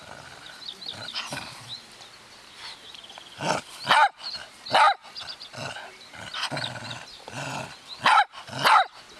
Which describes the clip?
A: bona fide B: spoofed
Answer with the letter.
A